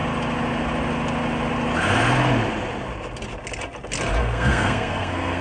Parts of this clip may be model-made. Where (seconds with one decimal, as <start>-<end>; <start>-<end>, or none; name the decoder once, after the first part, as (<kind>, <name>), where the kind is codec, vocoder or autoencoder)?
4.2-5.4 (codec, SNAC)